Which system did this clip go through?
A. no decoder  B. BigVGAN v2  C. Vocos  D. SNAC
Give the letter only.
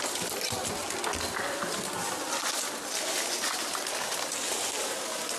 A